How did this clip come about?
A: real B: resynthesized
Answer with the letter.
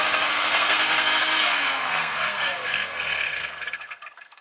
B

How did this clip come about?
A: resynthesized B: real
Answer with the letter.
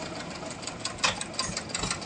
B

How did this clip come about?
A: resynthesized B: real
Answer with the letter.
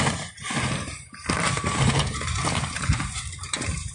B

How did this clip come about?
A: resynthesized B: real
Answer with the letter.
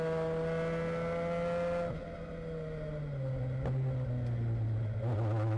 B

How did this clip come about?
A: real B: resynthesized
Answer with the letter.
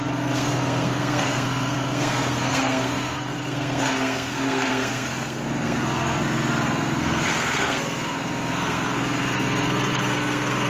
B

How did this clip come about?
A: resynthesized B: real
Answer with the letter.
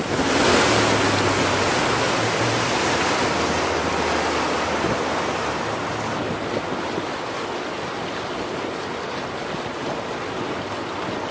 B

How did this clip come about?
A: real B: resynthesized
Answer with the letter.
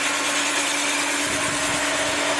A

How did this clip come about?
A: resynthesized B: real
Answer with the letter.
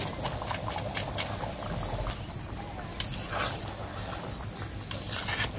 B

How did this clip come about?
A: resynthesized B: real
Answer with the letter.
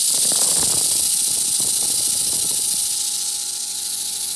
B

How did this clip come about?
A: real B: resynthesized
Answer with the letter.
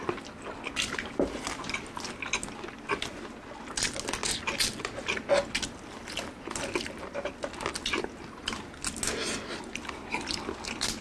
A